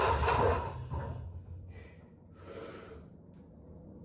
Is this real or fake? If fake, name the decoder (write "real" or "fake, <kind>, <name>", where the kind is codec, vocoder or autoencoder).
real